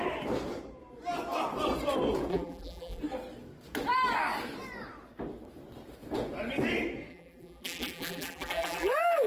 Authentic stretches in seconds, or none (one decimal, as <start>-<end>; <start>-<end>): 0.0-2.3; 3.0-7.1